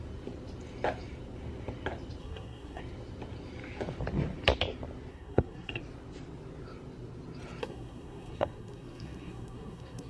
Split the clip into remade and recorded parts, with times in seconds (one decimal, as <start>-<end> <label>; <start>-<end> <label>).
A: 0.0-2.2 recorded; 2.2-2.8 remade; 2.8-5.1 recorded; 5.1-5.8 remade; 5.8-7.6 recorded; 7.6-10.1 remade